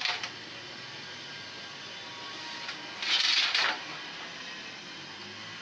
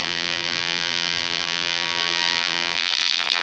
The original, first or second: first